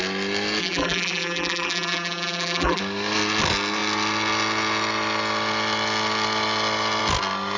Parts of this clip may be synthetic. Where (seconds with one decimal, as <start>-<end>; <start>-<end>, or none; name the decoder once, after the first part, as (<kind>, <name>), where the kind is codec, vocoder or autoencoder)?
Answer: 0.6-2.8 (vocoder, BigVGAN v2)